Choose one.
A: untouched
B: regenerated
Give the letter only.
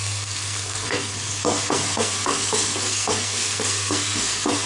B